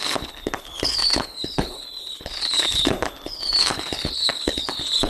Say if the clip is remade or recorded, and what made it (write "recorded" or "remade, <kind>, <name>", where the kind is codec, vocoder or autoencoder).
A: remade, codec, HILCodec